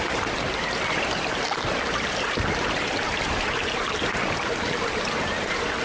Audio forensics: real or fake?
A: real